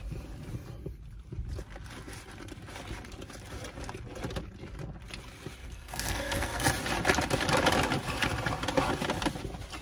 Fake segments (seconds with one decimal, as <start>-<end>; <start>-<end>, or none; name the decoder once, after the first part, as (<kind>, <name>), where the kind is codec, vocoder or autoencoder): 5.6-6.7 (codec, SNAC)